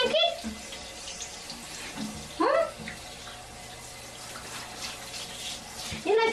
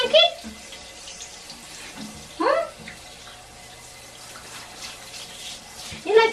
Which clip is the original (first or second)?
first